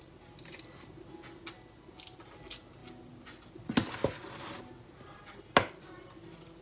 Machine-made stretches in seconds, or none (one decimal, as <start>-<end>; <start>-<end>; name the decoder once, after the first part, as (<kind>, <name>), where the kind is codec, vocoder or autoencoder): none